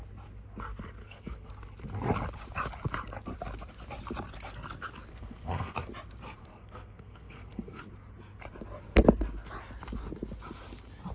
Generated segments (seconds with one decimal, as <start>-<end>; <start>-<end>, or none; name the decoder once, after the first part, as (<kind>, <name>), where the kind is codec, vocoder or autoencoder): 1.0-1.5 (codec, SNAC); 5.1-5.9; 6.4-7.8